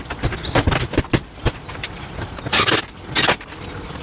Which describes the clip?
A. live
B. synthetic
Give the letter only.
A